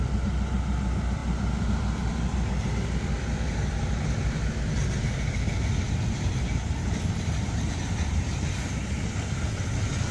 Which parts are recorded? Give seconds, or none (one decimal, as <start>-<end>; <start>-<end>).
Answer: 0.0-10.1